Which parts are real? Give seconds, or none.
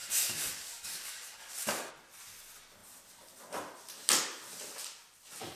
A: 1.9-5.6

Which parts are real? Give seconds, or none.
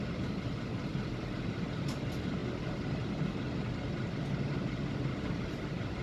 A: 0.0-6.0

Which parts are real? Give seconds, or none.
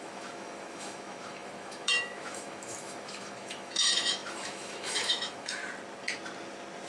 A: 5.6-6.9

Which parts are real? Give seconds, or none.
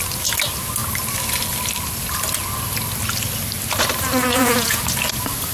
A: 0.0-4.3; 4.8-5.5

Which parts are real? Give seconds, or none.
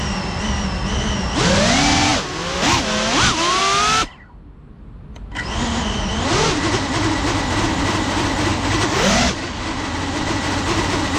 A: 0.0-8.5; 9.8-11.2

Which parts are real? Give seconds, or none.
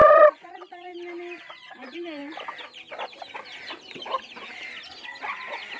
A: 0.9-1.4; 2.2-5.8